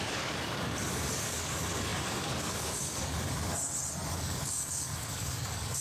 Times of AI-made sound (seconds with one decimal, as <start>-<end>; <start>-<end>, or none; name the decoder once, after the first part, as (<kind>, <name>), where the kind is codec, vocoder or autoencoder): 0.0-3.5 (codec, DAC); 4.1-5.8